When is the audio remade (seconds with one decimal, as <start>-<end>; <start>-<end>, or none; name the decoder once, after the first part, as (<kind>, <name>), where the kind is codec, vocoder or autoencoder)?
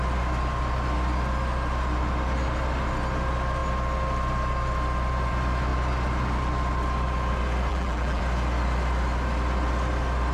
7.7-8.2 (vocoder, BigVGAN v2)